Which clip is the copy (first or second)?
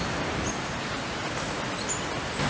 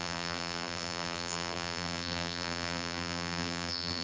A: second